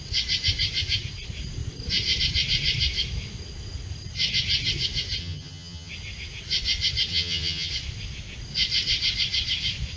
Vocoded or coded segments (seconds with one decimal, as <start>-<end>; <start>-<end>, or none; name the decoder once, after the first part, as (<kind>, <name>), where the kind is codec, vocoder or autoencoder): 5.2-5.9 (vocoder, HiFi-GAN); 7.1-7.7